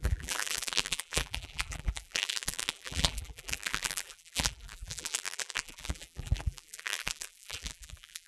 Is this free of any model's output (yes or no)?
no